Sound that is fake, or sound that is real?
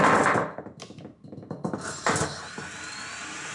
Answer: real